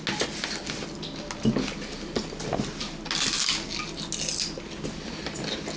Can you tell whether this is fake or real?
real